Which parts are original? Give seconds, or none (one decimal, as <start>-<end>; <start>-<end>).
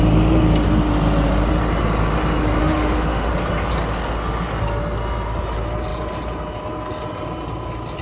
0.0-2.6; 3.3-8.0